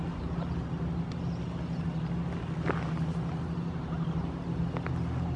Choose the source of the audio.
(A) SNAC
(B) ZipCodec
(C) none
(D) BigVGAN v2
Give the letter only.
C